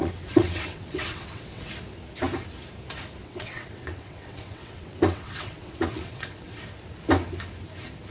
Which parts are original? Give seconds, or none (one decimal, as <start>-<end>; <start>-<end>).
1.7-3.2; 6.6-8.1